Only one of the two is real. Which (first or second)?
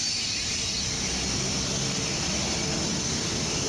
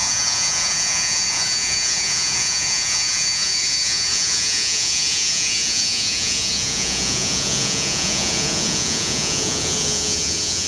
first